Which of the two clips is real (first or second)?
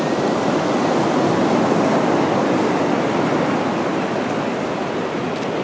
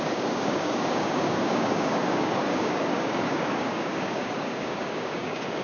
first